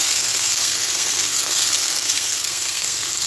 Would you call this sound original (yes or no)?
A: no